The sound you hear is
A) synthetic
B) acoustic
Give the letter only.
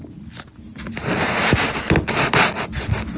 B